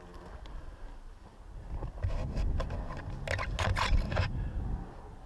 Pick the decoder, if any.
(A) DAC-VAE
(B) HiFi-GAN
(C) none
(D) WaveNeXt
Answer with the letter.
C